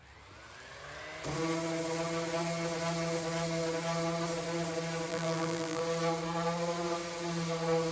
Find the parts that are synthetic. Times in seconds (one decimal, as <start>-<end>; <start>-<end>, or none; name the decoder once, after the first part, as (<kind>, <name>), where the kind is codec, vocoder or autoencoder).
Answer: 5.1-5.8 (vocoder, BigVGAN v2)